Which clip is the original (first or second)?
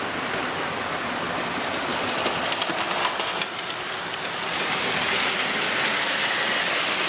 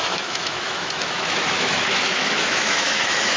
first